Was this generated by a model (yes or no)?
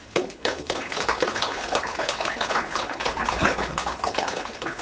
yes